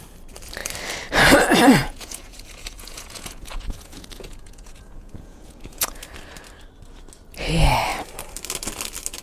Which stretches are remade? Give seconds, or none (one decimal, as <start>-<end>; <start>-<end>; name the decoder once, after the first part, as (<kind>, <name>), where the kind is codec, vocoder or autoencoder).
1.8-6.0 (vocoder, Vocos)